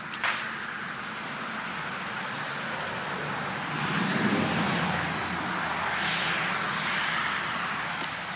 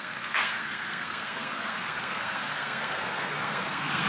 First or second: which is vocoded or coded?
second